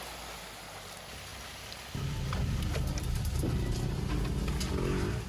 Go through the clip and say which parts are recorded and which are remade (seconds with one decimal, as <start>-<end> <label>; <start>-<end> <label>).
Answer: 0.0-1.3 recorded; 1.3-4.0 remade; 4.0-5.3 recorded